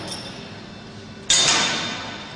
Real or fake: real